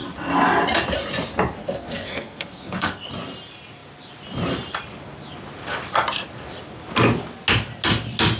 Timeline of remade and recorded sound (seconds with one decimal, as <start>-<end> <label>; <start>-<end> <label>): 0.0-1.6 recorded; 1.6-3.1 remade; 3.1-8.4 recorded